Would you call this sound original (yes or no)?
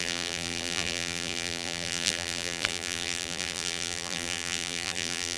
no